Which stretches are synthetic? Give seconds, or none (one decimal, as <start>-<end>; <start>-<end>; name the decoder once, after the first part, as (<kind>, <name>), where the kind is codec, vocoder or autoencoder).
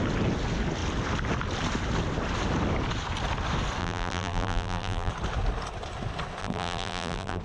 3.8-5.1 (vocoder, BigVGAN v2); 6.4-7.4